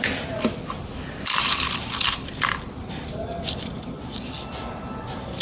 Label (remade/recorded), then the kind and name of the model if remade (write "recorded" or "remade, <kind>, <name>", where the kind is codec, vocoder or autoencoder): recorded